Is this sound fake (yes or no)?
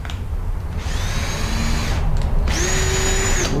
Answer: no